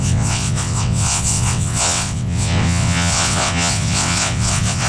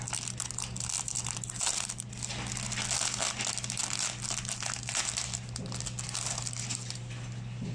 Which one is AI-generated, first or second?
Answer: first